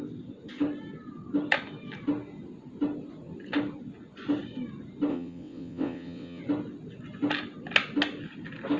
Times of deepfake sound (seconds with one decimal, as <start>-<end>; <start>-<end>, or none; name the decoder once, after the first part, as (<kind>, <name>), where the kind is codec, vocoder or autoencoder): 5.1-6.4 (vocoder, WaveNeXt)